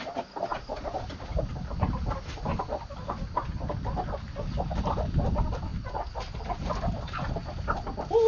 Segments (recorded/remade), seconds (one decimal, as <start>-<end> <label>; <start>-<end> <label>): 0.0-8.3 recorded